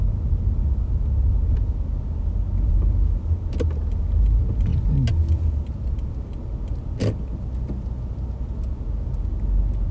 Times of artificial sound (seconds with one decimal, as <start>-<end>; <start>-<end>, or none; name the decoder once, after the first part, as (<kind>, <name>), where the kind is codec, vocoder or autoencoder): none